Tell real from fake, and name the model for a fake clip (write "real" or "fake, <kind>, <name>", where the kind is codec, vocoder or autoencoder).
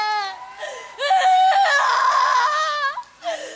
real